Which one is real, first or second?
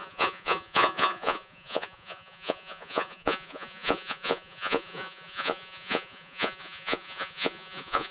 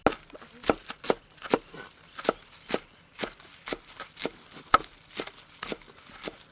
second